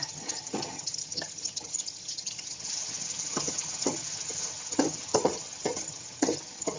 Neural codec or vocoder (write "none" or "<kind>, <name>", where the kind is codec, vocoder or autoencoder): vocoder, HiFi-GAN